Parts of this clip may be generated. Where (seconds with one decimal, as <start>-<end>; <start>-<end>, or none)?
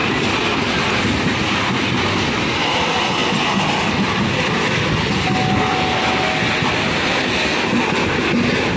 none